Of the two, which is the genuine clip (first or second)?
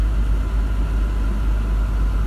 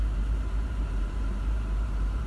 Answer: first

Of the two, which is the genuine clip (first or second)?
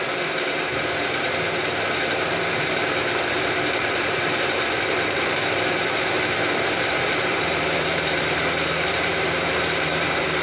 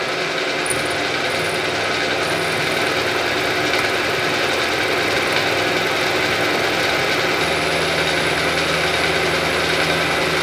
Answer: second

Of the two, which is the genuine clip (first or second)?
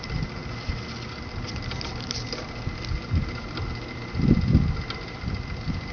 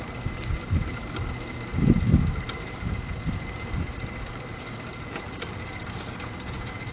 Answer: first